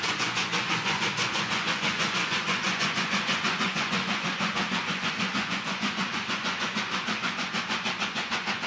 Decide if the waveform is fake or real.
fake